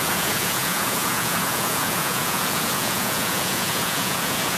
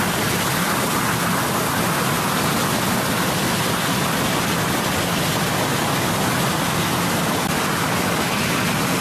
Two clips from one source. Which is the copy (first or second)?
first